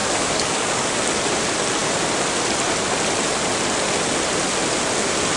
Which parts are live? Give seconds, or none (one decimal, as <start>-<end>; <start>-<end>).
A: 0.9-5.4

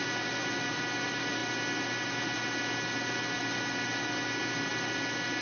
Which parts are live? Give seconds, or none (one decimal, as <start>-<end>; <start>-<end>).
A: 0.0-5.4

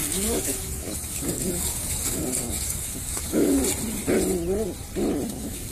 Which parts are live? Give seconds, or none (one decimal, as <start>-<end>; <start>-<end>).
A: 3.6-5.3

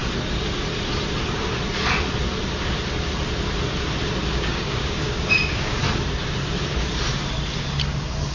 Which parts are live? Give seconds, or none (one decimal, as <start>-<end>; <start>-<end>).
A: 0.0-4.3; 5.8-8.3

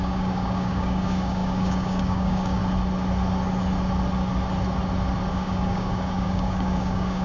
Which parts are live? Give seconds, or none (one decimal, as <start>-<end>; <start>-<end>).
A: 2.6-5.3

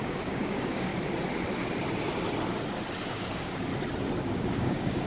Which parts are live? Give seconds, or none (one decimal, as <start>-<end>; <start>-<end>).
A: 0.9-3.1; 3.7-4.2

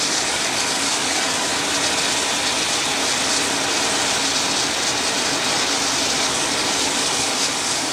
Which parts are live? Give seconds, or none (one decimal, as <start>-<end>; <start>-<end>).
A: 1.5-6.2